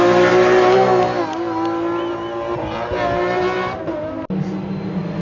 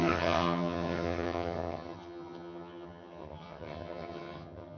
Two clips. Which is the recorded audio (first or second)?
first